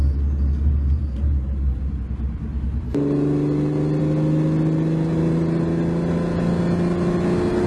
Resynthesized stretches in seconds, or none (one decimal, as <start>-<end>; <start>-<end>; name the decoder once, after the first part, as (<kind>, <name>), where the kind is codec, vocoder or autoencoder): none